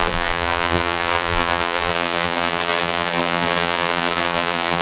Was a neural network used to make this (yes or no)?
yes